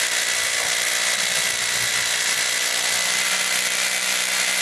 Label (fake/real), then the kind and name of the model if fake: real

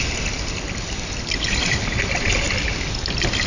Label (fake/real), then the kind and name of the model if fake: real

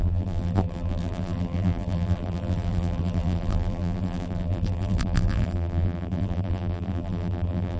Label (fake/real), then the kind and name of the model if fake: fake, vocoder, BigVGAN v2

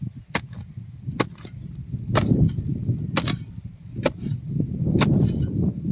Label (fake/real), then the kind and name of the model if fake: real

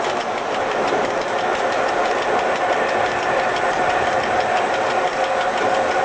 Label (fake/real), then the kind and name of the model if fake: real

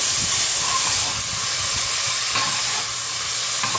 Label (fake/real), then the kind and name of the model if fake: real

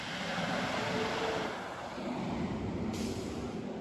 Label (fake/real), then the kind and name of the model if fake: real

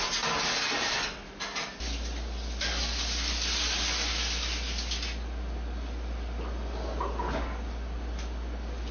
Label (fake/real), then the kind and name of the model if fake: real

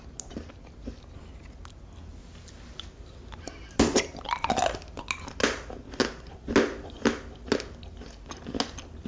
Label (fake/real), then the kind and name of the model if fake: real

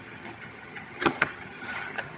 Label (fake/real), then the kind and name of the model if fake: fake, vocoder, HiFi-GAN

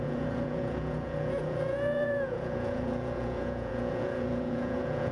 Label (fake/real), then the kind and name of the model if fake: fake, vocoder, Vocos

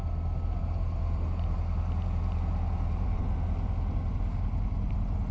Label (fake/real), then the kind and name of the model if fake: real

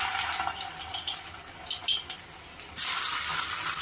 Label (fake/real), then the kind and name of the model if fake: real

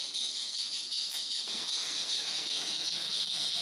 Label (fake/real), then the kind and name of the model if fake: fake, codec, SNAC